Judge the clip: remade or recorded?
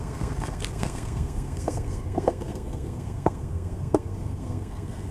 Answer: remade